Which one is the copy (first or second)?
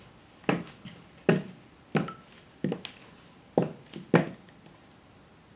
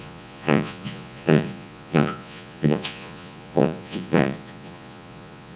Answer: second